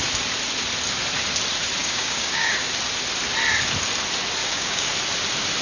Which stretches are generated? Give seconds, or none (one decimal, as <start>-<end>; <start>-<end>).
1.8-2.5; 4.4-4.9